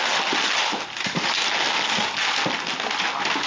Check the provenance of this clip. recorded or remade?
recorded